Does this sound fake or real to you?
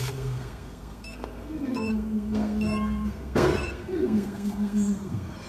fake